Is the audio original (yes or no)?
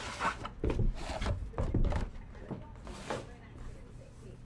yes